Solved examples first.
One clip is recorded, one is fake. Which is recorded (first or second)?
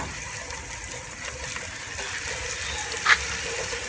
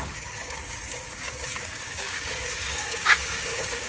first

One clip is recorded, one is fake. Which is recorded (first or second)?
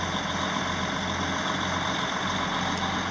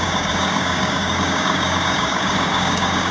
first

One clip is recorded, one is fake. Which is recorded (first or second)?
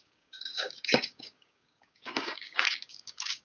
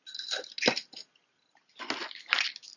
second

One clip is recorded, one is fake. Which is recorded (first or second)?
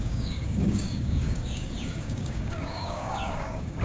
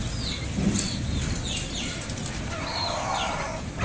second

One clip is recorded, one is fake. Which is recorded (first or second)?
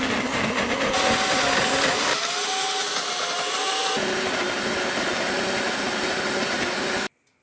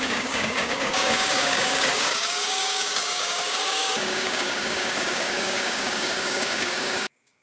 first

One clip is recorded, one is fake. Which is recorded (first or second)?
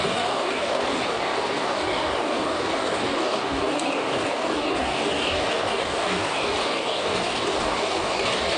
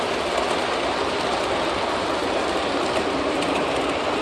second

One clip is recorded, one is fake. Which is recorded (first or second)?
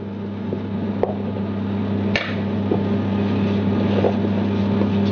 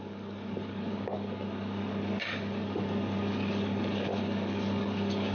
first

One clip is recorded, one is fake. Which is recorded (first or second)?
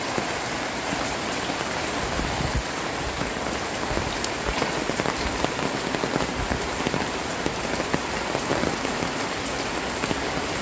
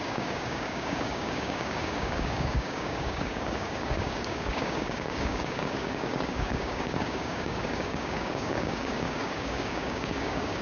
first